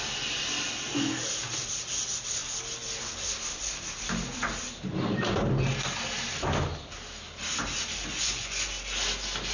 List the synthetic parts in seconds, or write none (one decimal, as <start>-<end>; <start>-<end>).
8.1-8.7